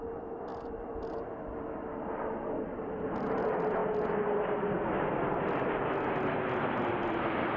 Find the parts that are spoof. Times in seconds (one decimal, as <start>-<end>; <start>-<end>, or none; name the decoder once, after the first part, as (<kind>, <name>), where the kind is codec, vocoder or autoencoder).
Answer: 0.0-0.5 (vocoder, BigVGAN v2); 2.7-3.8; 6.6-7.6